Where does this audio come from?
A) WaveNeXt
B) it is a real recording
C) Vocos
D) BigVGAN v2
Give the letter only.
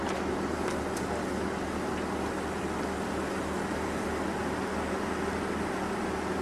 B